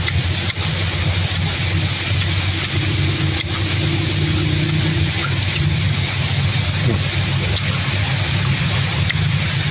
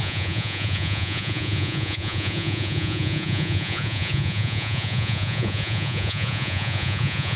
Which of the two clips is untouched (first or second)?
first